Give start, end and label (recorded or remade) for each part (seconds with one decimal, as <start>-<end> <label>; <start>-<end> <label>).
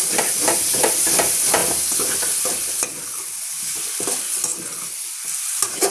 0.0-4.5 remade; 4.5-5.9 recorded